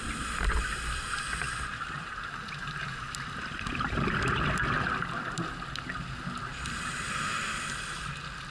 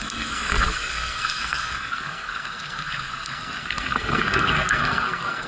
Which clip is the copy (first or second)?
second